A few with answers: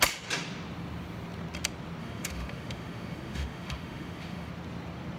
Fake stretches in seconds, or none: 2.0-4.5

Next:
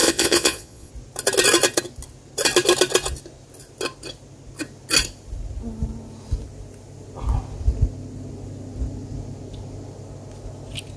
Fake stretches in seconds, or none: 0.0-0.9

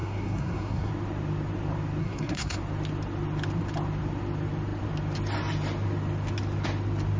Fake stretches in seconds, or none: 0.0-0.9; 2.0-2.6

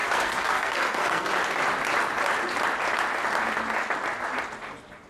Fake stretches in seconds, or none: 0.0-1.3

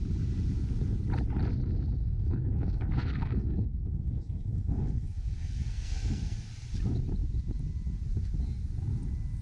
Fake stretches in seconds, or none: 2.0-6.5

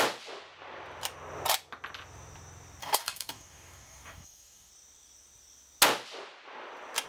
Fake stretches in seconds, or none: 2.8-4.7

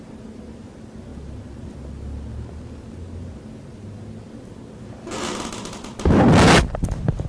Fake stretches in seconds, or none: none